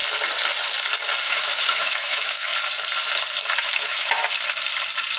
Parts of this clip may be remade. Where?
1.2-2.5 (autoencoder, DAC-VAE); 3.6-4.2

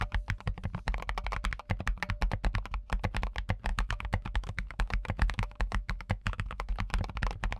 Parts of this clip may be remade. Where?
3.7-6.7 (autoencoder, DAC-VAE)